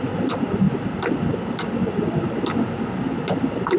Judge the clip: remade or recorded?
recorded